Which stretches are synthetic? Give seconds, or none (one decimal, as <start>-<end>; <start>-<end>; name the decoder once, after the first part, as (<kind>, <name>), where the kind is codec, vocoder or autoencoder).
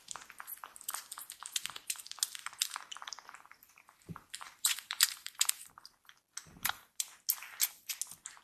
1.4-2.0 (vocoder, BigVGAN v2); 2.4-5.7; 6.4-7.1